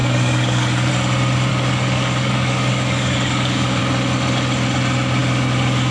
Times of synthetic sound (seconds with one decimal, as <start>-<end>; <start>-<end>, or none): 0.0-0.9; 1.5-3.8